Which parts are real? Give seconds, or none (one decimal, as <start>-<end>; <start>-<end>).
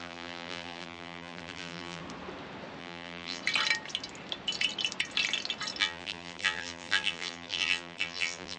2.0-2.8; 3.4-5.8